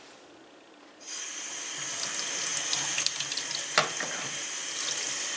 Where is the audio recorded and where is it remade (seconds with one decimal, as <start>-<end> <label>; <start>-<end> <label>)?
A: 0.0-5.4 recorded